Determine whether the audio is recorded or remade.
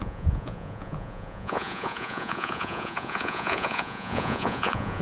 remade